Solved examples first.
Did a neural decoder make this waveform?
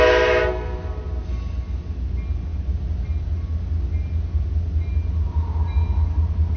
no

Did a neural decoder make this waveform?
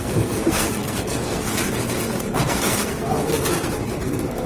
yes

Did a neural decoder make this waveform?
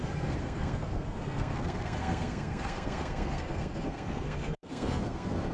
yes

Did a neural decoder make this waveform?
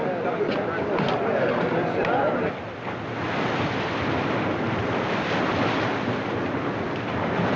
no